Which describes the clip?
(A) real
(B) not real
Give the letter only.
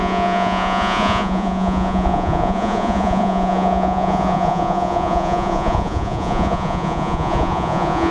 B